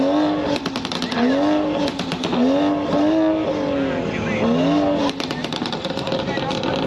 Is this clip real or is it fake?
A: real